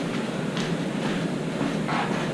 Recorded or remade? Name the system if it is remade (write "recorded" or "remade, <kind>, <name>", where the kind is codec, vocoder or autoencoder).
recorded